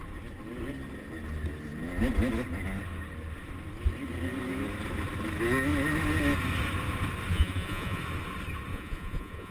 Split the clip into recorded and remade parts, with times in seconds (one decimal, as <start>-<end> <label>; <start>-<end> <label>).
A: 0.0-7.3 recorded; 7.3-8.0 remade; 8.0-8.7 recorded; 8.7-9.5 remade